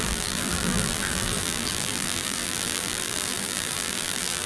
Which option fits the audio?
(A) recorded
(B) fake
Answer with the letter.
B